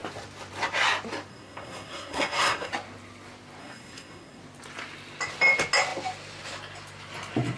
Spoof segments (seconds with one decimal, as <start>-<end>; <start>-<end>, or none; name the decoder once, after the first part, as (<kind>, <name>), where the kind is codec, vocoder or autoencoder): 1.3-2.7 (codec, SNAC); 3.6-4.4